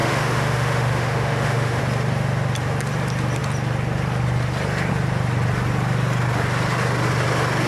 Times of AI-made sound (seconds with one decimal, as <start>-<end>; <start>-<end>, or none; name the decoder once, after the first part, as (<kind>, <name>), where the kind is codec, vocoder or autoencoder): 0.0-1.8 (autoencoder, DAC-VAE)